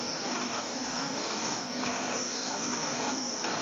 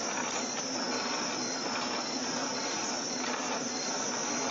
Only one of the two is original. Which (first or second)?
second